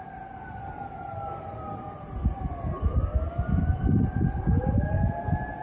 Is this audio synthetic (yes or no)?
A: no